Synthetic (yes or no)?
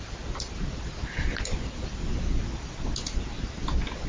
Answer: no